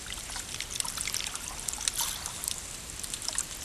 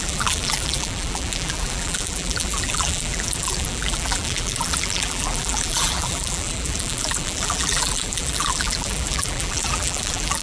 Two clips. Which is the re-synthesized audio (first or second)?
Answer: second